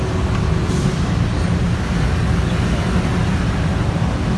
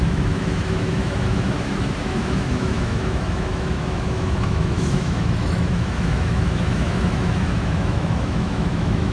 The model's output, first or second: second